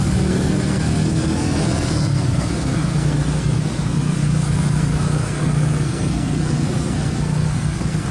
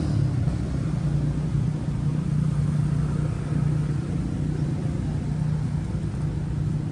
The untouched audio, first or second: second